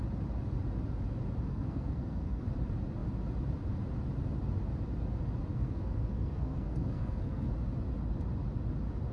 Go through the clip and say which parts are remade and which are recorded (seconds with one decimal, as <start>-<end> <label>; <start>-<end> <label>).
0.0-1.5 recorded; 1.5-2.4 remade; 2.4-5.5 recorded; 5.5-7.5 remade; 7.5-9.1 recorded